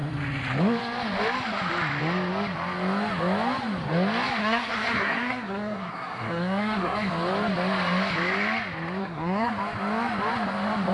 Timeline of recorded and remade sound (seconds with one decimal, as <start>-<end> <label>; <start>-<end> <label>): 0.0-4.4 recorded; 4.4-7.1 remade; 7.1-9.0 recorded; 9.0-9.5 remade; 9.5-10.9 recorded